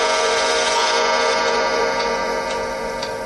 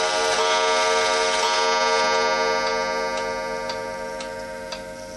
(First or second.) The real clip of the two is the second